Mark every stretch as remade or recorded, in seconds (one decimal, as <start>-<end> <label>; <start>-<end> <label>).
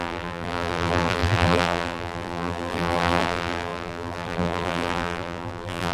0.0-5.9 remade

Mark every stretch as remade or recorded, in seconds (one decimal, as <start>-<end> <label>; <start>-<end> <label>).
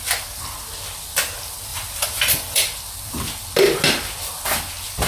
0.0-1.7 recorded; 1.7-2.6 remade; 2.6-5.1 recorded